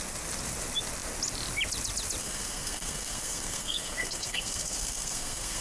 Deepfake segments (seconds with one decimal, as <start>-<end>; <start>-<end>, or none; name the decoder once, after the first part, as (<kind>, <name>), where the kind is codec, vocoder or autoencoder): 2.2-5.6 (codec, SNAC)